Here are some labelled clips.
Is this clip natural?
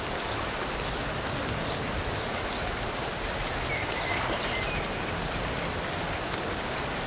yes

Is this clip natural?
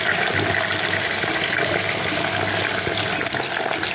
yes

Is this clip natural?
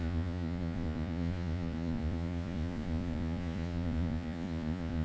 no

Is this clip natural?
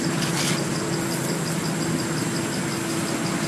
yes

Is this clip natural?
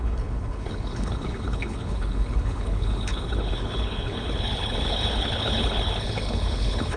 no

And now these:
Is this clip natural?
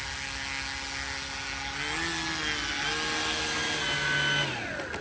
yes